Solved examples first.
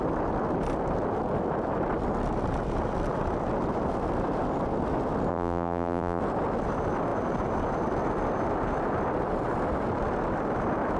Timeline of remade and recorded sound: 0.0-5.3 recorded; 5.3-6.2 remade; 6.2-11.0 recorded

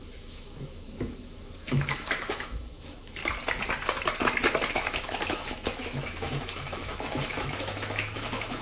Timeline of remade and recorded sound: 0.0-3.2 remade; 3.2-4.7 recorded; 4.7-8.6 remade

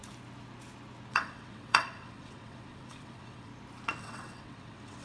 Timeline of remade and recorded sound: 0.0-1.1 recorded; 1.1-3.5 remade; 3.5-4.0 recorded; 4.0-5.0 remade